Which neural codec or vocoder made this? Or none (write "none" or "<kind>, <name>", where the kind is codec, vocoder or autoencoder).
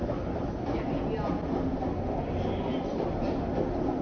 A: none